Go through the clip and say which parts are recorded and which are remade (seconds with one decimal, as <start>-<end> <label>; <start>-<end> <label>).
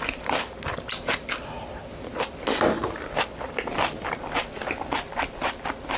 0.0-6.0 recorded